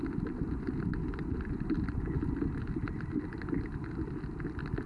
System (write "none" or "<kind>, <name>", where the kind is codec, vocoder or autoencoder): none